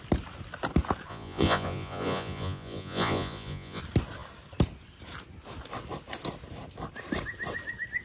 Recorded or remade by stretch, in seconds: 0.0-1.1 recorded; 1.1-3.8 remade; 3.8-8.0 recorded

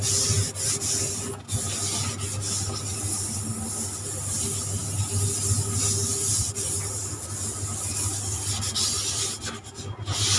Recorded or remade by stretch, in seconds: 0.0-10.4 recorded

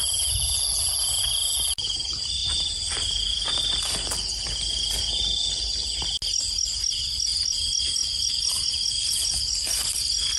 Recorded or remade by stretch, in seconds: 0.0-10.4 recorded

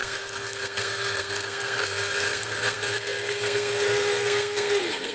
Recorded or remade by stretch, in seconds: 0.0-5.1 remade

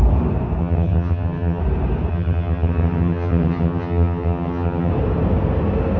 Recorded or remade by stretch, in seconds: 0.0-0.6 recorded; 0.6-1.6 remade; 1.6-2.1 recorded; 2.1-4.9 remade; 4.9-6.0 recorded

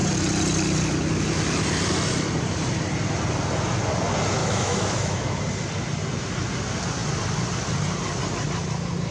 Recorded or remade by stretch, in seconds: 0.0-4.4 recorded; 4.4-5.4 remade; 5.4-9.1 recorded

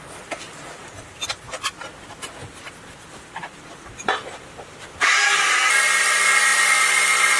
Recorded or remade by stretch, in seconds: 0.0-0.8 recorded; 0.8-1.3 remade; 1.3-2.4 recorded; 2.4-5.7 remade; 5.7-6.5 recorded; 6.5-7.4 remade